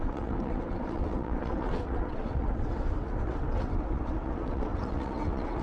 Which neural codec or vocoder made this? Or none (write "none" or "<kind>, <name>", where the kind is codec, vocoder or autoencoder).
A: vocoder, WaveNeXt